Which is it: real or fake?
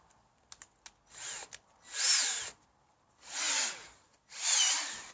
real